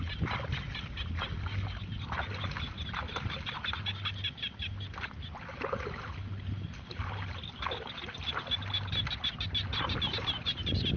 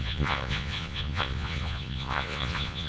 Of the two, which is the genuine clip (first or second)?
first